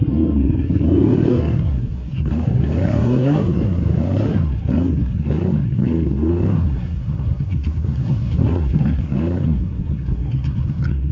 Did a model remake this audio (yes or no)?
yes